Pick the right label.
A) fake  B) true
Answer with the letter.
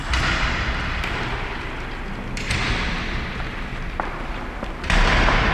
B